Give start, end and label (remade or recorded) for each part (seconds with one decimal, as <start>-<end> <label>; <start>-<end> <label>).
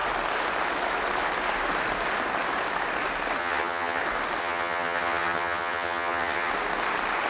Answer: 0.0-3.4 recorded; 3.4-4.0 remade; 4.0-4.4 recorded; 4.4-6.5 remade; 6.5-7.3 recorded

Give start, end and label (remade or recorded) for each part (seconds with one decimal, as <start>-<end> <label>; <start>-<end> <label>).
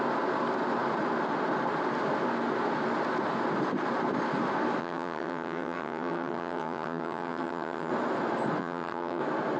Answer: 0.0-4.8 recorded; 4.8-7.9 remade; 7.9-8.6 recorded; 8.6-9.2 remade; 9.2-9.6 recorded